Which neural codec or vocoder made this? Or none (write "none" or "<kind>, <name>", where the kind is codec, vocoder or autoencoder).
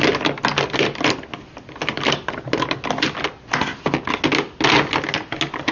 none